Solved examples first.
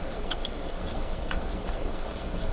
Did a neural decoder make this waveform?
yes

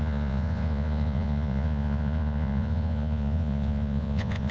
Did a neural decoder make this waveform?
yes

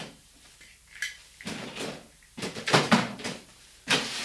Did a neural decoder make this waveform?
yes